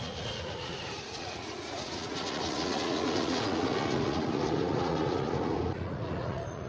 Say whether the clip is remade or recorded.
remade